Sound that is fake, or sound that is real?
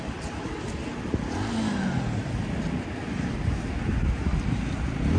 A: real